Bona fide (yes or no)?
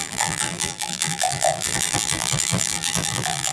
no